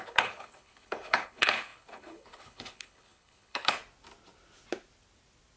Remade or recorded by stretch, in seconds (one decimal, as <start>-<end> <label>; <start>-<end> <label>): 0.0-3.8 remade; 3.8-5.6 recorded